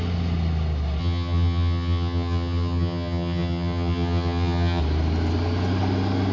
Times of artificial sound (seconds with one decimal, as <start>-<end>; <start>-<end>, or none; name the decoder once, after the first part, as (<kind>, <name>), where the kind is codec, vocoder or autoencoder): 1.0-4.8 (vocoder, HiFi-GAN)